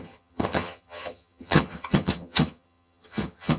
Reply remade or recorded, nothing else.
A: remade